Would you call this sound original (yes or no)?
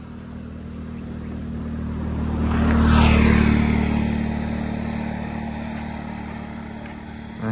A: yes